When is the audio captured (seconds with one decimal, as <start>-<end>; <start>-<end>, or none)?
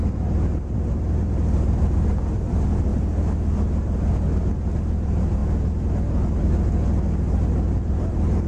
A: 0.0-1.8; 2.9-4.8; 5.4-7.9